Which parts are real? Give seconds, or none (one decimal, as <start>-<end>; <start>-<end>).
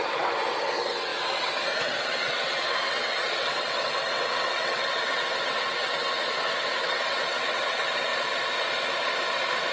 8.1-9.7